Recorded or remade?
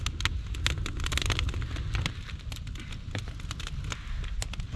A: recorded